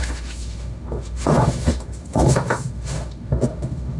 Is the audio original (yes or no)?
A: no